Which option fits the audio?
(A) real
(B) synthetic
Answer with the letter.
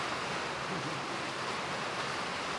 A